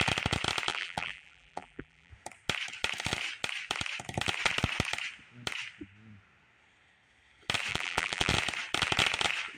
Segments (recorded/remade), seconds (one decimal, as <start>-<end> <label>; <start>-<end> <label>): 0.0-0.7 recorded; 0.7-2.1 remade; 2.1-7.7 recorded; 7.7-8.3 remade; 8.3-9.6 recorded